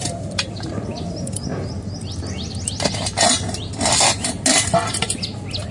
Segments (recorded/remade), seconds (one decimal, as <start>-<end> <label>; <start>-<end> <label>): 0.0-1.5 remade; 1.5-4.9 recorded; 4.9-5.7 remade